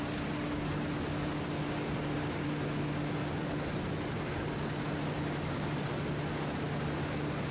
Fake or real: real